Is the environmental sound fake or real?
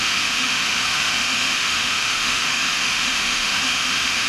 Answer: fake